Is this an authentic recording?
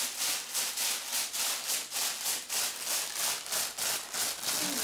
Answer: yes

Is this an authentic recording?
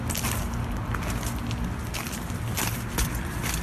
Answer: yes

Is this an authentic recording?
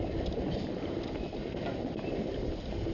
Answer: yes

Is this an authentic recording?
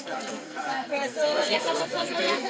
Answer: no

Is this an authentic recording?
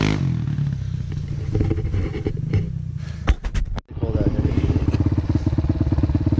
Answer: yes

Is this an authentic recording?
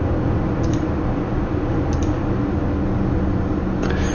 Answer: yes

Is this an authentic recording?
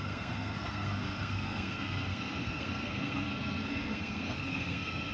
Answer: no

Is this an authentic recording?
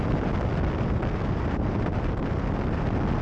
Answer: yes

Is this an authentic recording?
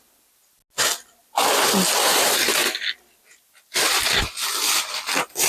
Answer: yes